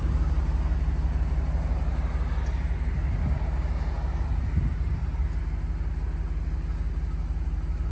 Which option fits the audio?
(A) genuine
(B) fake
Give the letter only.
A